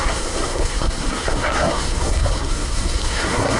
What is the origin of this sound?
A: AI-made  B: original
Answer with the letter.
A